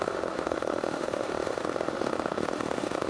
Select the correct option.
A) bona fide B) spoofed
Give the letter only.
B